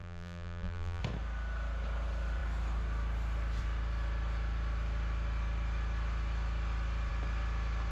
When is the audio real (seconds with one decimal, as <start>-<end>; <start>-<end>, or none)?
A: 1.0-7.9